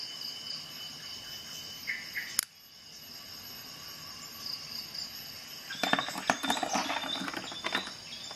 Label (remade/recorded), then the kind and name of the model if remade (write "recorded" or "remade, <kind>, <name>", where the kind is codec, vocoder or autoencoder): recorded